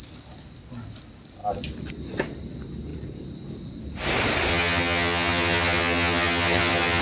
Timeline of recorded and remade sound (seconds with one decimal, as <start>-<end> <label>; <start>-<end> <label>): 0.0-4.5 recorded; 4.5-7.0 remade